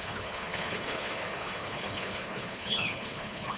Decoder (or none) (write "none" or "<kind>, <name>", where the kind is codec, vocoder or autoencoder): codec, HILCodec